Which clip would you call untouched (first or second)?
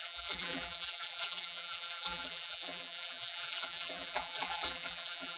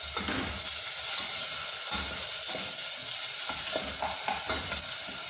second